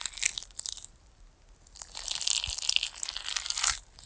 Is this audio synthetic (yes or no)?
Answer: no